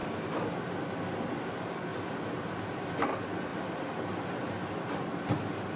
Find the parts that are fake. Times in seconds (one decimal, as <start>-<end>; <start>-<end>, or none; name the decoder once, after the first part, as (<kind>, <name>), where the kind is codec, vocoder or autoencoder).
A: 0.0-0.5 (vocoder, BigVGAN v2)